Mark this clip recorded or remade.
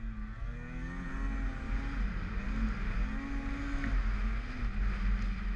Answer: recorded